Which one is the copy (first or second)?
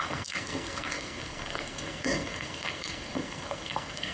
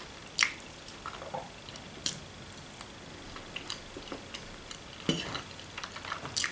first